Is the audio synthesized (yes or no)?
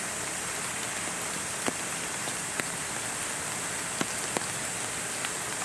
no